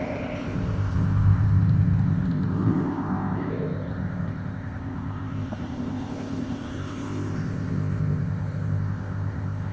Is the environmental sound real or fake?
fake